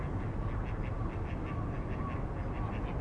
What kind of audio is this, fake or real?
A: real